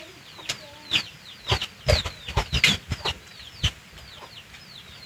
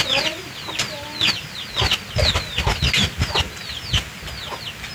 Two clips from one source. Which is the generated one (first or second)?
first